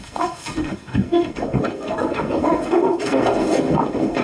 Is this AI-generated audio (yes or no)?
yes